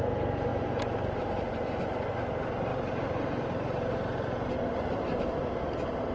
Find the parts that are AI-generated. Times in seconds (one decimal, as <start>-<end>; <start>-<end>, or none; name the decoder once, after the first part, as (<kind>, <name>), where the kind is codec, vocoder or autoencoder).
none